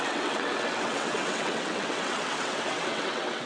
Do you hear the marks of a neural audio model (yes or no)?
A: yes